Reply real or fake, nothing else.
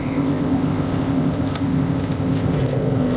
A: fake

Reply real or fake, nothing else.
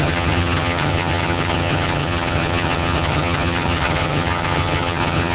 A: fake